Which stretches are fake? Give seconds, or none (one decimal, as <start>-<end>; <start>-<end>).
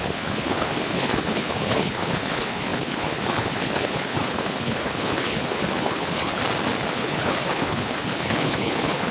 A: 0.0-6.4; 6.9-9.1